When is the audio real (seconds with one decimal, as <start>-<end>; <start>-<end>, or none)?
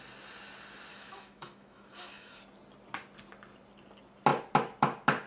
0.0-0.9; 2.4-5.3